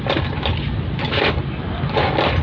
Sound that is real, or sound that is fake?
real